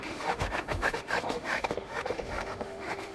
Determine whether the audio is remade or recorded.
remade